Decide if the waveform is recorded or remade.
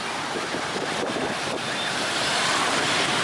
remade